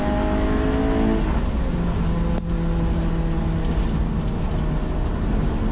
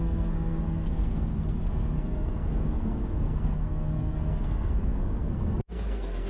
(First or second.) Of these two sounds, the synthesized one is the second